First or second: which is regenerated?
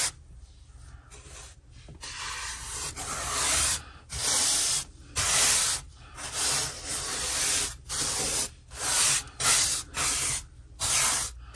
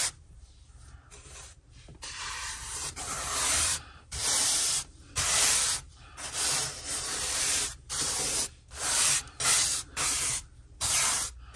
second